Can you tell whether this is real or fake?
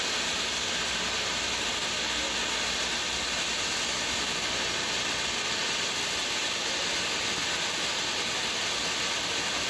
real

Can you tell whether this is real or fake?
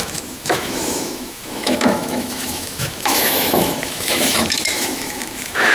fake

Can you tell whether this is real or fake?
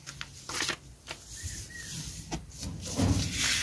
real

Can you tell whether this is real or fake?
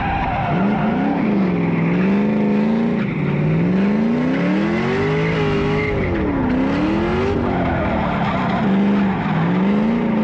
real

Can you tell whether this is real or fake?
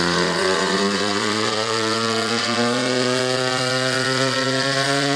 fake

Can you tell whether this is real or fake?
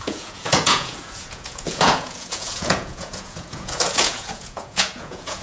fake